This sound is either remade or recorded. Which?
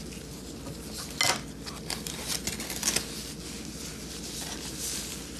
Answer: recorded